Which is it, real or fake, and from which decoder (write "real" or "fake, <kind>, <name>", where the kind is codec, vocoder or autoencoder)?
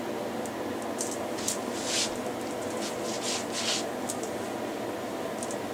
real